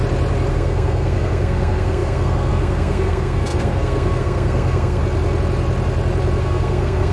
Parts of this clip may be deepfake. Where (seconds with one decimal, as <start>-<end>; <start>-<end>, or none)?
0.5-5.0; 6.4-7.1